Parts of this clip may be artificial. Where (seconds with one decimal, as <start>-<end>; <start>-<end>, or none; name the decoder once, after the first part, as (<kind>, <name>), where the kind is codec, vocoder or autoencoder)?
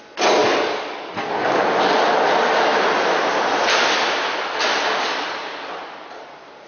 0.4-1.6 (codec, DAC)